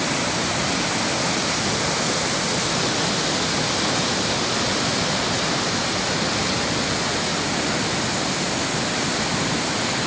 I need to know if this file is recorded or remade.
recorded